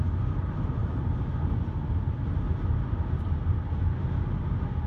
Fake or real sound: real